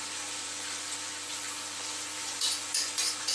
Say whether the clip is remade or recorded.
remade